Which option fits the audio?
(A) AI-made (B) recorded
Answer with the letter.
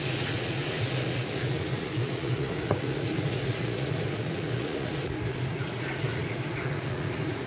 A